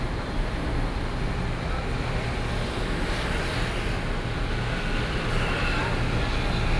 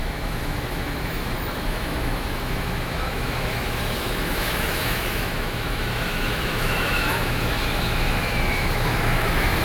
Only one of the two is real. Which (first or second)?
first